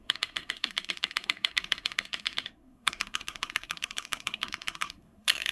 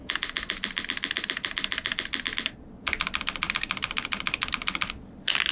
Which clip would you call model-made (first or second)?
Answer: first